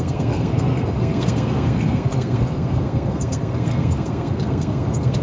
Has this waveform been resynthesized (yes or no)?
yes